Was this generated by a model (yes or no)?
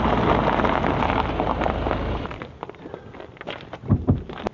no